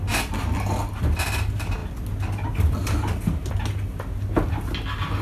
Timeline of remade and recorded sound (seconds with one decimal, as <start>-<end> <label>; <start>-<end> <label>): 0.0-5.2 recorded